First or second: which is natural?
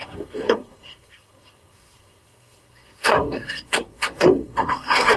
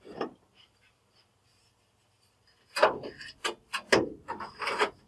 second